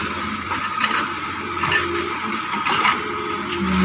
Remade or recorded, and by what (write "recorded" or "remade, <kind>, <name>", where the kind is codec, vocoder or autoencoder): remade, vocoder, BigVGAN v2